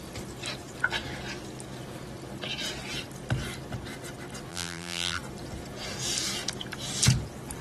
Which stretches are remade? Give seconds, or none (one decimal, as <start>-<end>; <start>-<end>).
4.5-5.2